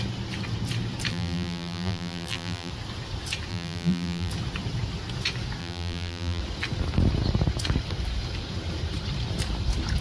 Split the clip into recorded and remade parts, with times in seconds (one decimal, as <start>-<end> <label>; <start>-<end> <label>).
0.0-1.1 recorded; 1.1-2.7 remade; 2.7-3.5 recorded; 3.5-4.3 remade; 4.3-5.6 recorded; 5.6-6.4 remade; 6.4-10.0 recorded